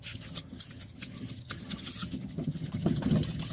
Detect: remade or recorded remade